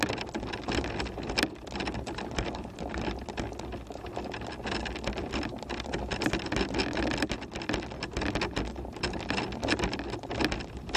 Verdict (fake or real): real